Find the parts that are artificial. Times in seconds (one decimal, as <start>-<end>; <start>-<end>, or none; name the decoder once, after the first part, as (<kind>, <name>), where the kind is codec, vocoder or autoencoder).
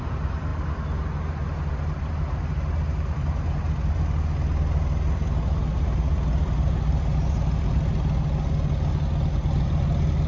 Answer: none